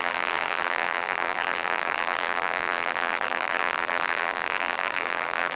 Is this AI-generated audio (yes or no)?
yes